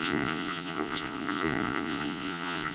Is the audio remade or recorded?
remade